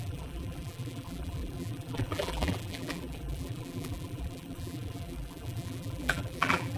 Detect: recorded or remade remade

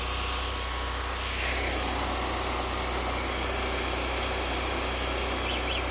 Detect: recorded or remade recorded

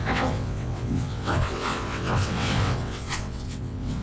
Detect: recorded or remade remade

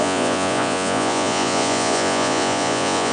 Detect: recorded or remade remade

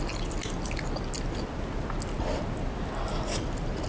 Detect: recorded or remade recorded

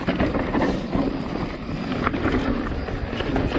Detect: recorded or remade recorded